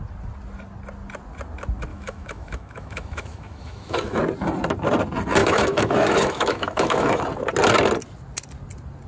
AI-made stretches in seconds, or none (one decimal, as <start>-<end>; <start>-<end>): 1.9-4.2; 5.4-7.2